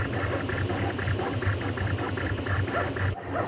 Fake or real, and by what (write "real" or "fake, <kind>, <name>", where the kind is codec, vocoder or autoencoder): real